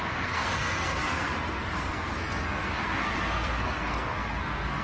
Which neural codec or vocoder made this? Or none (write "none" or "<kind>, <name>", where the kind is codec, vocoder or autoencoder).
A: codec, SNAC